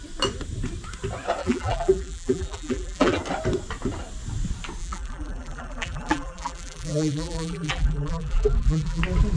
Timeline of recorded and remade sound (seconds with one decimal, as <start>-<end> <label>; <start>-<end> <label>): 0.0-1.4 recorded; 1.4-3.2 remade; 3.2-4.8 recorded; 4.8-9.0 remade; 9.0-9.4 recorded